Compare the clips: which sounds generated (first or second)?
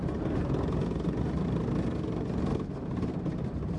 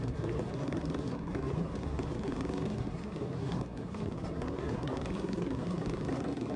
second